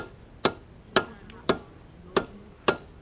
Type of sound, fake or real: real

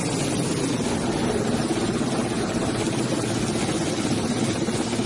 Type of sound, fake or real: real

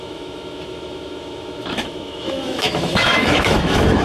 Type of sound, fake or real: fake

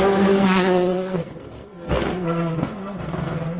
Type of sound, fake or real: fake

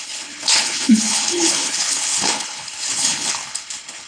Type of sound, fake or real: fake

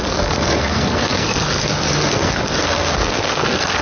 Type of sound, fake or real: fake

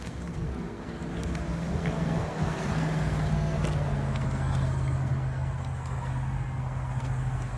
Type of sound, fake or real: fake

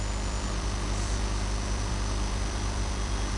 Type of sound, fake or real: fake